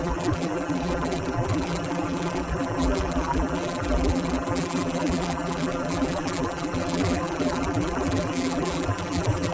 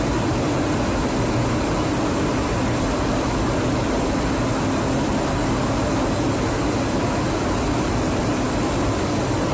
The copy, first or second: first